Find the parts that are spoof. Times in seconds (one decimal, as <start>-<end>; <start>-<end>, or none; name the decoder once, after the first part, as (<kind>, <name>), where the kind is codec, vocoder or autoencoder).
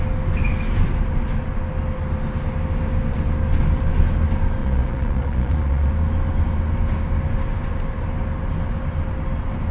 4.6-5.9 (vocoder, Vocos)